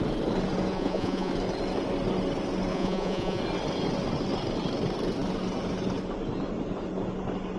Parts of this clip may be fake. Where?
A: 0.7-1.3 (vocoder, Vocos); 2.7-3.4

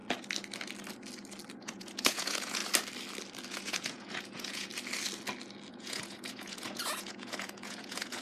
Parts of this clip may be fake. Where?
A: 1.6-2.6 (vocoder, Vocos); 3.5-4.7; 5.7-8.2

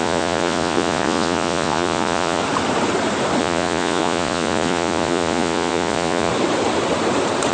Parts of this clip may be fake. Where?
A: 0.0-2.4 (vocoder, Vocos); 3.4-6.3

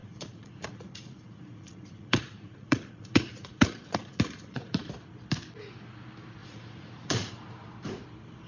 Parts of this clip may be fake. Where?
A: 0.0-4.9 (vocoder, Vocos); 6.4-7.3

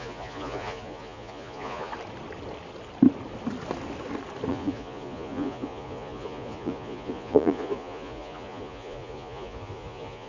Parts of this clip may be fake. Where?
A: 0.0-1.9 (vocoder, Vocos); 4.5-10.3

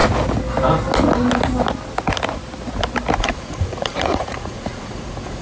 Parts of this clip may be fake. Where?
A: 3.2-5.4 (vocoder, Vocos)

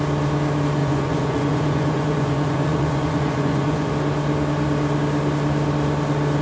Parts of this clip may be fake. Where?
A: 0.8-3.9 (vocoder, Vocos)